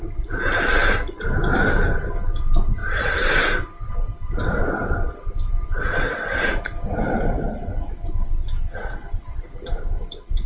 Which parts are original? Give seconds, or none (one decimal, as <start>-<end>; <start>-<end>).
0.0-10.5